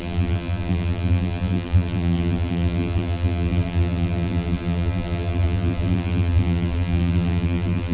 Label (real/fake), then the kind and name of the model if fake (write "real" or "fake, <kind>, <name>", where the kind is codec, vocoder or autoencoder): fake, vocoder, BigVGAN v2